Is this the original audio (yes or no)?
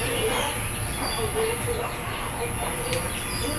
yes